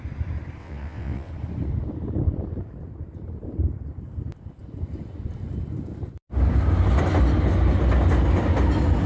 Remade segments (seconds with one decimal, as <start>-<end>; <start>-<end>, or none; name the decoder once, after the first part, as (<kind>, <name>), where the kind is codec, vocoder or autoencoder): 0.6-1.3 (vocoder, WaveNeXt)